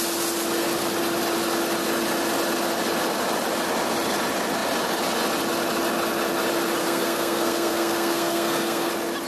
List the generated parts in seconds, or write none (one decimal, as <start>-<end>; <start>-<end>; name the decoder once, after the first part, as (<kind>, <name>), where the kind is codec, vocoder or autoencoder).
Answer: 6.8-8.9 (codec, SNAC)